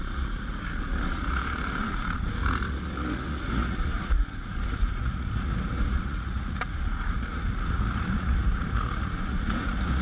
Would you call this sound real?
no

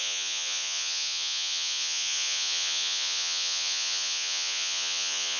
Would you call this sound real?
no